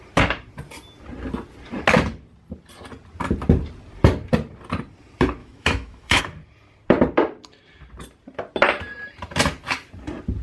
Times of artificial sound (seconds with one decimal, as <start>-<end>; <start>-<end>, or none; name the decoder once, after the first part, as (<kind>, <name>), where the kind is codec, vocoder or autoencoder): 5.4-6.2 (autoencoder, DAC-VAE)